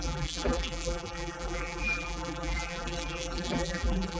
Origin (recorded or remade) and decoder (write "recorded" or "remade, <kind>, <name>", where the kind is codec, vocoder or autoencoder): remade, vocoder, BigVGAN v2